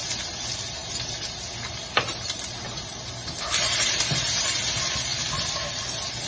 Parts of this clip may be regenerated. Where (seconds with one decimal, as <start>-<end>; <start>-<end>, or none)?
0.8-4.6